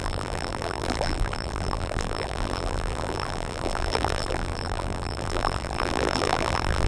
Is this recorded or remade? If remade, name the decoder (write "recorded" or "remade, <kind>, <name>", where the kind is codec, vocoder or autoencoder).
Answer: remade, vocoder, BigVGAN v2